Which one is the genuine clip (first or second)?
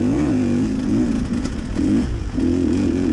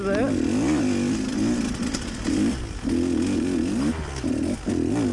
second